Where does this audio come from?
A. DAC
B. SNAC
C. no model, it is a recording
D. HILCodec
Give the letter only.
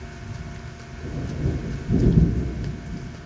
C